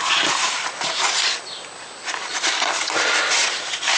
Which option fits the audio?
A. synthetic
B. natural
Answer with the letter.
B